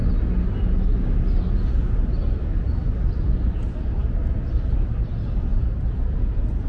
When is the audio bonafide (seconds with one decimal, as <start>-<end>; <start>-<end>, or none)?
0.0-5.5